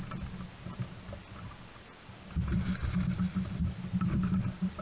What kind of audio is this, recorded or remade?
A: recorded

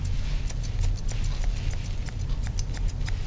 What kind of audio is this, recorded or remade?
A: recorded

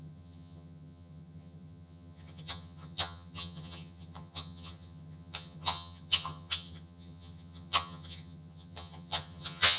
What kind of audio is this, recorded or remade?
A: remade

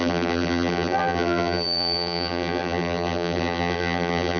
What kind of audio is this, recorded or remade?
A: remade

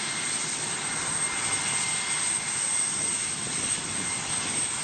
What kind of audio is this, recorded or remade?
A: recorded